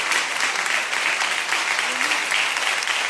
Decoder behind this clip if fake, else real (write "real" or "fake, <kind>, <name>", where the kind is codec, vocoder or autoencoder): real